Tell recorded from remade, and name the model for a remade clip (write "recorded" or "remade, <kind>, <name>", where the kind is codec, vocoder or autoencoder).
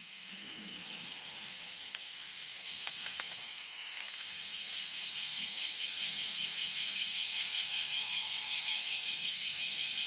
remade, codec, SNAC